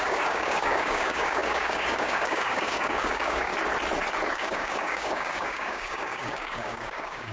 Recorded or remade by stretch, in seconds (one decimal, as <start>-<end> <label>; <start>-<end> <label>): 0.0-3.5 remade; 3.5-4.3 recorded; 4.3-7.3 remade